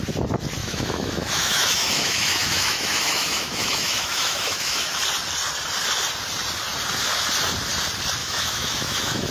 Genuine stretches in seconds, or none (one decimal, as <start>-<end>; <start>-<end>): 0.0-0.6; 5.0-8.2

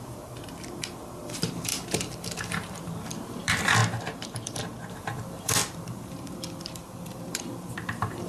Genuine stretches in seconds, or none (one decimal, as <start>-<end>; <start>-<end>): none

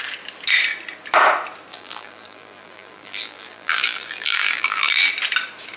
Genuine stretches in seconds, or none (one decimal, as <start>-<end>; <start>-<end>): 0.0-1.7; 5.1-5.8

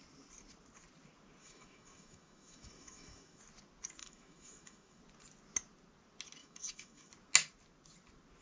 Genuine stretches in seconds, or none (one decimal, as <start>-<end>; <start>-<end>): 0.0-1.4; 3.4-4.0; 5.0-6.4; 7.1-8.4

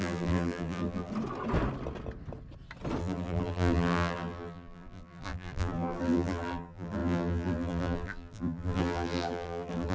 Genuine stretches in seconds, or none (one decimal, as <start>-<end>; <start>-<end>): 1.1-3.0

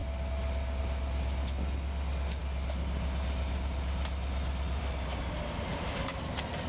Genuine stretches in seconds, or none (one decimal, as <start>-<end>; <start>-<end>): 0.0-6.7

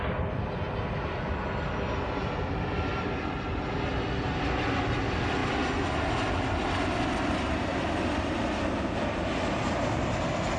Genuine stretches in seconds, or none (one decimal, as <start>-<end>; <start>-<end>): 0.0-10.6

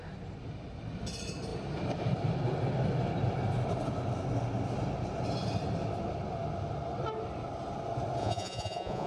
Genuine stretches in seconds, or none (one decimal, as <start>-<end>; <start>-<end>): 0.0-8.2